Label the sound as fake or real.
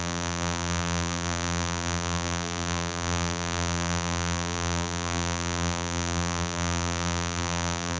fake